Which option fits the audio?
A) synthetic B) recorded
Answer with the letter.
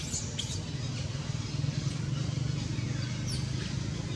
B